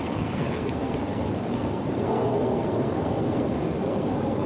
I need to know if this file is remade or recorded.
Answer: remade